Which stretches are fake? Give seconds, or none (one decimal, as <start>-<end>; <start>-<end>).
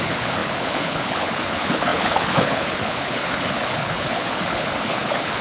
0.0-5.4